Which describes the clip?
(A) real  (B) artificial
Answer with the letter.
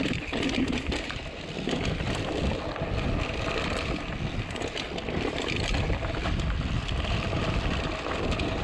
B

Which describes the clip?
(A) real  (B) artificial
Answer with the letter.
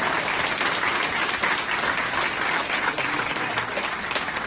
A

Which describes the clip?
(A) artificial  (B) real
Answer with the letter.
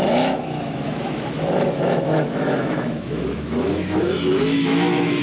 A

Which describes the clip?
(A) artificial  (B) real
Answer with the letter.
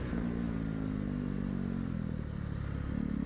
B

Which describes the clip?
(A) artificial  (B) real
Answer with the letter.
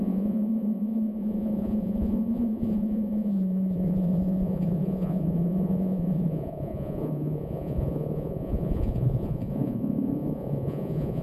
A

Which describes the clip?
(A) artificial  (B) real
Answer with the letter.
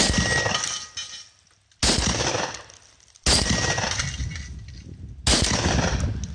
B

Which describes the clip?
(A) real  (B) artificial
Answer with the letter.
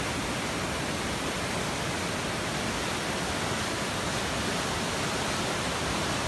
A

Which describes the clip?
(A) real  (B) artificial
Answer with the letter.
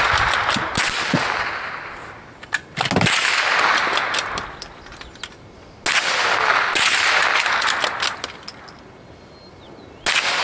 A